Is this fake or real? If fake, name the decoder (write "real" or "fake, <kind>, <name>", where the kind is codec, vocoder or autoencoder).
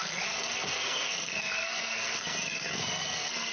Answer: fake, codec, SNAC